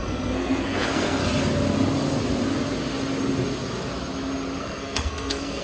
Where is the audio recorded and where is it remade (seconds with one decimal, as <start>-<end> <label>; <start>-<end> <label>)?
0.0-1.2 remade; 1.2-4.6 recorded; 4.6-5.6 remade